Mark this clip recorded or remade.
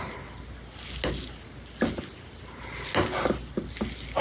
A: recorded